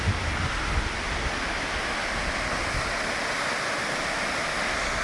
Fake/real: real